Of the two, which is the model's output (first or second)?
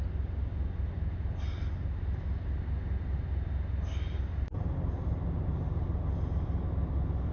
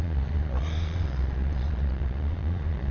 second